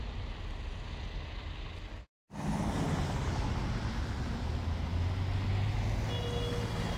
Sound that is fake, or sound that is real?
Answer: real